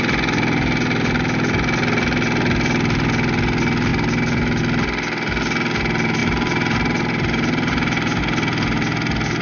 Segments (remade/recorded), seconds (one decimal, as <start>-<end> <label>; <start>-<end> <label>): 0.0-6.2 recorded; 6.2-8.2 remade; 8.2-9.4 recorded